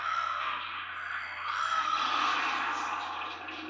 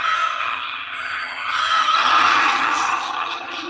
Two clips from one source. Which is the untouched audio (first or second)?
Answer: first